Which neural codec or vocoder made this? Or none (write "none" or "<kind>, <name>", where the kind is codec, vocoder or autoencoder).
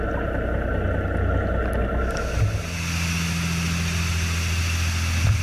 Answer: none